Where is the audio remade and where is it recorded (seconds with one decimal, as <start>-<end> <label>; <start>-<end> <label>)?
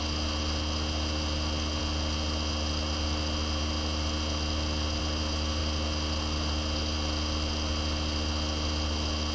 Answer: 0.0-9.3 recorded